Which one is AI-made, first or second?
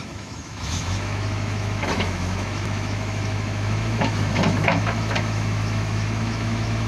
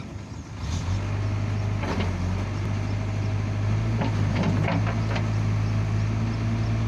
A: first